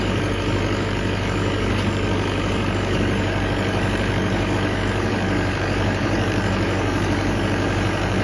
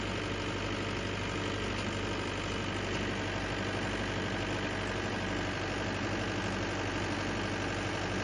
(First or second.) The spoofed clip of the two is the first